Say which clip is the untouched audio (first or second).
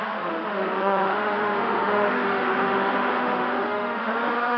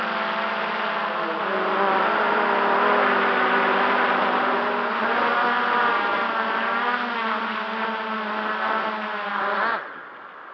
second